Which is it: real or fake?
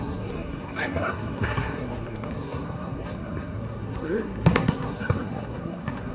fake